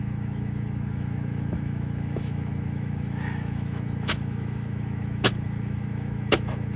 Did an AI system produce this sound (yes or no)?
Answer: yes